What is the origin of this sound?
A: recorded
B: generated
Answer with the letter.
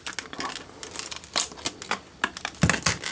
A